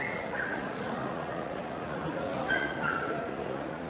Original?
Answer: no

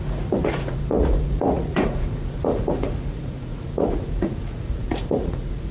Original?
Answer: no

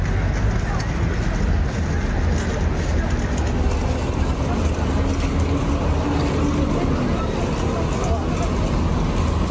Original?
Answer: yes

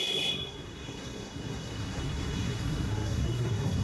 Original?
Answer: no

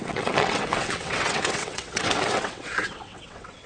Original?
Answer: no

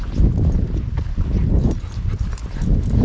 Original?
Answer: yes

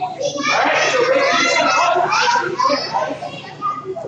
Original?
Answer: yes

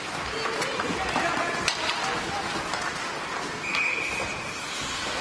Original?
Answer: yes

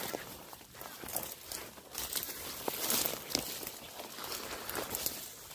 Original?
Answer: yes